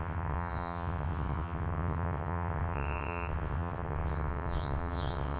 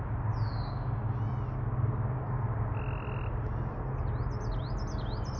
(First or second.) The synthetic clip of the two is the first